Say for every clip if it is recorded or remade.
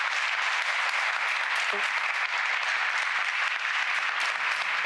recorded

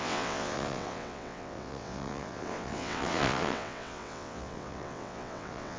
remade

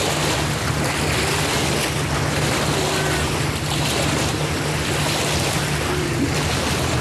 recorded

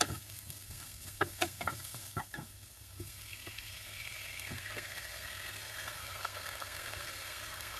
remade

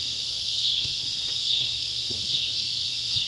remade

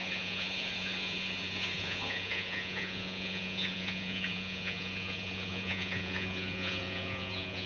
remade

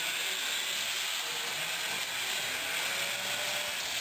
recorded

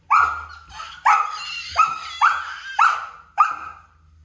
recorded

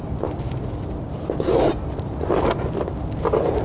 recorded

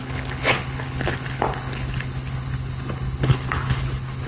remade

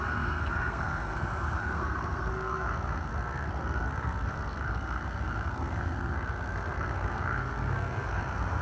remade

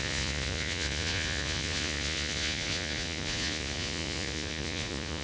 remade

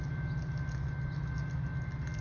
recorded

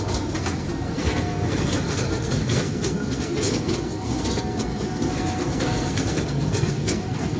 remade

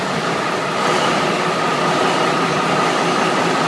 recorded